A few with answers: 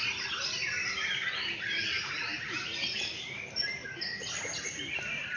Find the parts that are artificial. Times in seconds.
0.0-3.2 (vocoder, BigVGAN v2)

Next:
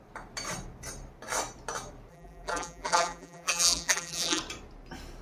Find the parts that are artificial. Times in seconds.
2.1-4.4 (vocoder, BigVGAN v2)

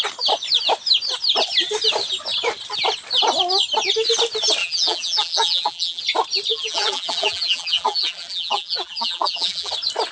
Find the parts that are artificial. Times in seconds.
4.6-6.0 (vocoder, BigVGAN v2); 6.5-9.7